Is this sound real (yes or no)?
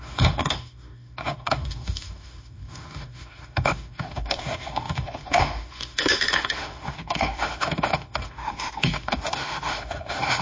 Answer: no